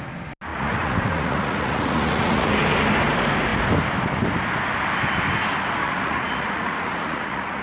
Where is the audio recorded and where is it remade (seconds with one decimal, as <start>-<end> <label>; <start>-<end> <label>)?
0.0-0.5 recorded; 0.5-2.5 remade; 2.5-5.8 recorded; 5.8-7.6 remade